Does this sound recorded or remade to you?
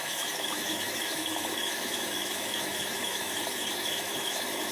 remade